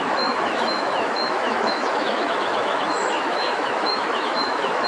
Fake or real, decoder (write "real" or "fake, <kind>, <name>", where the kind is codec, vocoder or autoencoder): fake, autoencoder, DAC-VAE